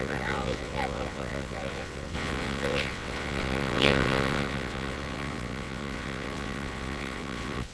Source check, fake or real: fake